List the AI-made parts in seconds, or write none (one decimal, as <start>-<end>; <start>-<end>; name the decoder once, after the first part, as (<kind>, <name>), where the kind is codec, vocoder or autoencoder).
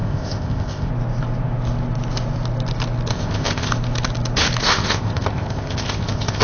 0.0-0.9 (codec, ZipCodec); 3.1-3.7; 4.6-6.4